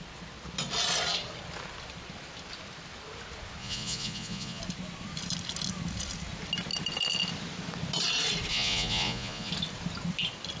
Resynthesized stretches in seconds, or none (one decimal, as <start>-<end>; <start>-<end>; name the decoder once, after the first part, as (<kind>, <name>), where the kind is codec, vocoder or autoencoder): 3.6-4.6 (vocoder, Vocos); 8.5-9.5